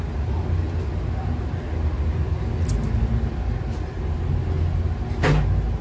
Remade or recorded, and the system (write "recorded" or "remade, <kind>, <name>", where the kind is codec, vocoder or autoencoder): recorded